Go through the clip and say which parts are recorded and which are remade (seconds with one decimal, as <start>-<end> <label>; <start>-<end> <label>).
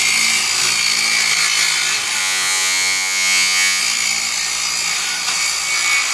0.0-2.2 recorded; 2.2-3.8 remade; 3.8-6.1 recorded